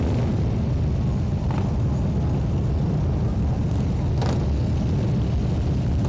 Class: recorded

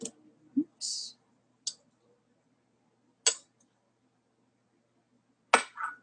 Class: recorded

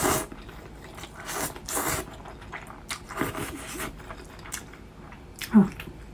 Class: recorded